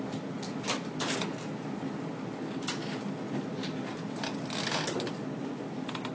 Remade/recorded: recorded